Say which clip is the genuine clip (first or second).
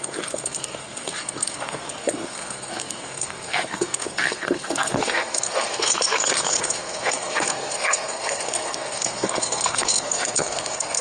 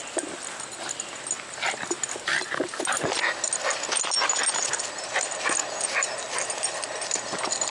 second